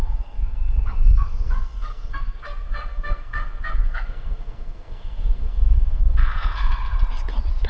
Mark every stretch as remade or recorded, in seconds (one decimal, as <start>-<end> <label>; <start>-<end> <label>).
0.0-6.9 remade; 6.9-7.7 recorded